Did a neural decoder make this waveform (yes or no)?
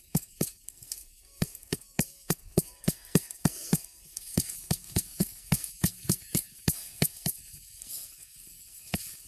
yes